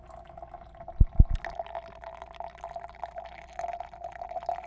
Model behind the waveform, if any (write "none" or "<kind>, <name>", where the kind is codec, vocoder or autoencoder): none